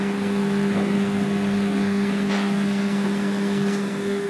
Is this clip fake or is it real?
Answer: fake